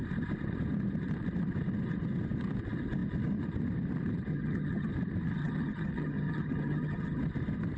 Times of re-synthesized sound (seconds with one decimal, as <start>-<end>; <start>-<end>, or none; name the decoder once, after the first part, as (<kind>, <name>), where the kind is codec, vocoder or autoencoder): 4.3-4.9 (vocoder, HiFi-GAN); 5.4-7.2